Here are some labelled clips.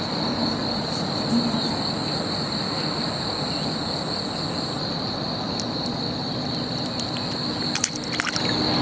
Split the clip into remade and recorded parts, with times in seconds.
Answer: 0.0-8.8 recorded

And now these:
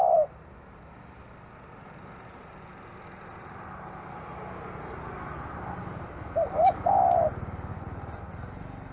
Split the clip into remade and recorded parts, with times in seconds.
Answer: 0.0-7.7 recorded; 7.7-8.2 remade; 8.2-8.9 recorded

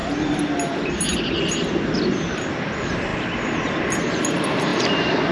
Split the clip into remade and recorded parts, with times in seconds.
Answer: 0.0-5.3 recorded

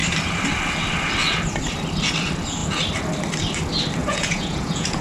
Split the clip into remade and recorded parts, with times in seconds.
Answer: 0.0-4.0 recorded; 4.0-5.0 remade

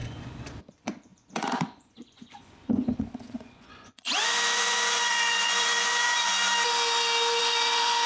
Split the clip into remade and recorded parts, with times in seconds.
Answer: 0.0-6.3 remade; 6.3-7.4 recorded; 7.4-8.1 remade

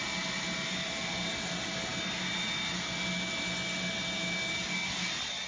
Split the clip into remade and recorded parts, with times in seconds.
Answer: 0.0-5.5 recorded

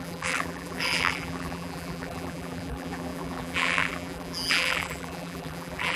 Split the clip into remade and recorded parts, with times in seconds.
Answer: 0.0-6.0 remade